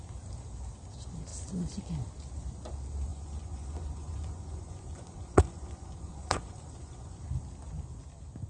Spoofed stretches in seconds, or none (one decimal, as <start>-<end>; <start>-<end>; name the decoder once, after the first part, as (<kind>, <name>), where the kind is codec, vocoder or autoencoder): 3.1-7.2 (vocoder, Vocos)